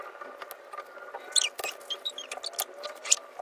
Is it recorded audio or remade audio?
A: recorded